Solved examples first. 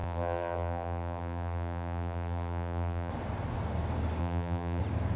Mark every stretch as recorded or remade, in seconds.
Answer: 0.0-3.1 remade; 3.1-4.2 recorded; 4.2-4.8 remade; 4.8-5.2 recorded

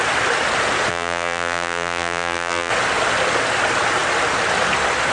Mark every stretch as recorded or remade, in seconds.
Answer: 0.0-0.9 recorded; 0.9-2.7 remade; 2.7-5.1 recorded

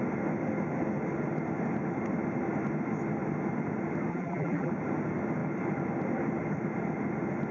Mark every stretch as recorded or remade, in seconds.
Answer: 0.0-4.1 recorded; 4.1-4.7 remade; 4.7-7.5 recorded

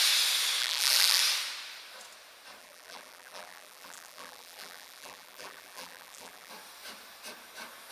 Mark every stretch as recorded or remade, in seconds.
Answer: 0.0-0.6 recorded; 0.6-1.2 remade; 1.2-2.6 recorded; 2.6-6.5 remade; 6.5-7.9 recorded

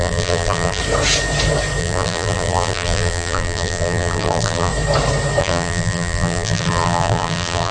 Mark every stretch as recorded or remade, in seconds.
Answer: 0.0-0.8 remade; 0.8-1.8 recorded; 1.8-4.7 remade; 4.7-5.4 recorded; 5.4-7.7 remade

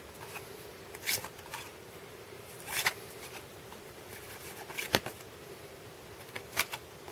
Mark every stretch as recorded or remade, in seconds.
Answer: 0.0-0.7 recorded; 0.7-5.0 remade; 5.0-7.1 recorded

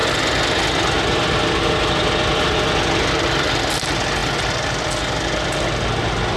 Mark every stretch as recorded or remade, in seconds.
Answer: 0.0-6.4 recorded